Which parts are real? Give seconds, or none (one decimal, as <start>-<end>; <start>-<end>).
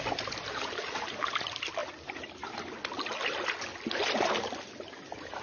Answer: 0.0-5.4